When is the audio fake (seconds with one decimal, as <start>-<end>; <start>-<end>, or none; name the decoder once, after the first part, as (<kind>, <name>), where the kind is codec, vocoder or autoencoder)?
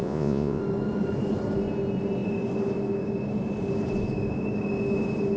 0.0-0.6 (vocoder, Vocos)